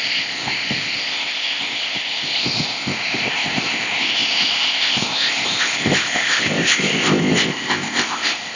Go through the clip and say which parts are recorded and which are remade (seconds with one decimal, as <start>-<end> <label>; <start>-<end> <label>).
0.0-8.6 remade

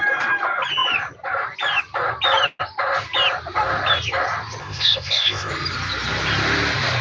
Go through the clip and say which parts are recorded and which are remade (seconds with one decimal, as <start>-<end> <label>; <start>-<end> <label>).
0.0-4.6 recorded; 4.6-5.5 remade; 5.5-7.0 recorded